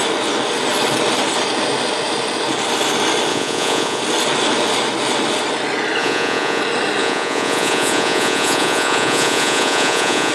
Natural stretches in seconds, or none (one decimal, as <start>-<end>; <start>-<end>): 0.0-3.3; 4.0-6.0; 6.6-7.0